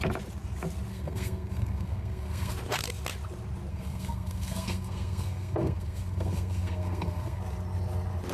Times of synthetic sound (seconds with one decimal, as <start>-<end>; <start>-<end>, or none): 0.9-2.5; 3.7-7.4

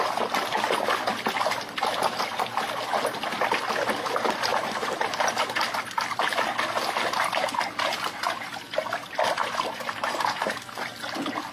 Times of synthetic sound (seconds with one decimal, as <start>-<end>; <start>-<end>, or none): 4.5-5.3; 9.4-10.5

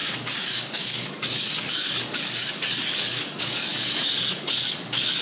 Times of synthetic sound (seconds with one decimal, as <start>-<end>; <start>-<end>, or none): 0.0-5.2

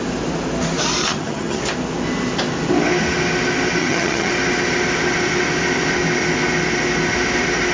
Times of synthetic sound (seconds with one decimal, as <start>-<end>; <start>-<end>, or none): 1.0-1.6; 3.8-4.3

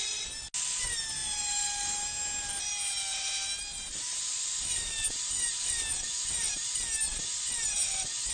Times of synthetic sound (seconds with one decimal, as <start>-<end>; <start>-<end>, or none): none

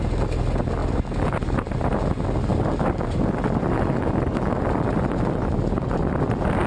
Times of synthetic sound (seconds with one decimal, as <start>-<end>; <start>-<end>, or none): 0.8-2.1; 2.5-6.3

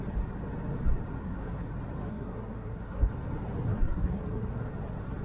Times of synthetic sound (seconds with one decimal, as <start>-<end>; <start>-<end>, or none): 1.2-1.7; 2.1-3.1; 3.7-4.7

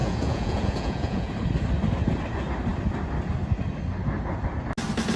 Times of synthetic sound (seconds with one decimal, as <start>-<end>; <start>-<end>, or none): 0.0-1.3